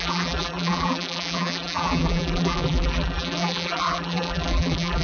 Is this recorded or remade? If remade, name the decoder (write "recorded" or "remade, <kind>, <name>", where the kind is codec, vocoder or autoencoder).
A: remade, vocoder, BigVGAN v2